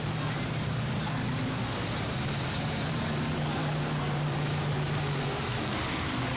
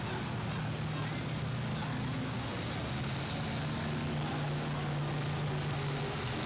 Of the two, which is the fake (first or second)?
first